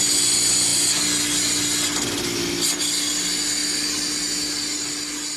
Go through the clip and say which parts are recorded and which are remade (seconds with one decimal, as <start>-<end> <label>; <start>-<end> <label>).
0.0-5.4 recorded